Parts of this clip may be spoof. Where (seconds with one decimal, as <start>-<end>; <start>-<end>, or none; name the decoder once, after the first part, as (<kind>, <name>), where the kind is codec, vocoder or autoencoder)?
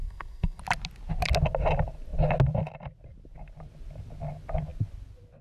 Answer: 0.0-0.6 (codec, SNAC)